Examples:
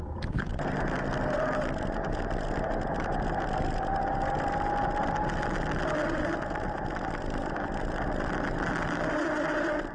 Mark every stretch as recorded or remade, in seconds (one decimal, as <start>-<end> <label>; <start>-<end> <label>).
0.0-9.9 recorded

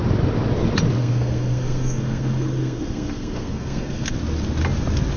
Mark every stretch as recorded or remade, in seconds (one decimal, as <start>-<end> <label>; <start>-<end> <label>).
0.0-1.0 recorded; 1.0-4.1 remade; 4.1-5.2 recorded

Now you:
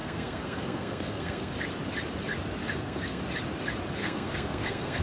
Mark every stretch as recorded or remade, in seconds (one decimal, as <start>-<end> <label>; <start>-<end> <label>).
0.0-1.5 remade; 1.5-2.6 recorded; 2.6-3.2 remade; 3.2-4.0 recorded; 4.0-5.0 remade